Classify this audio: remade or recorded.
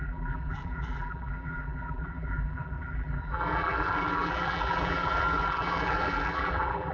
remade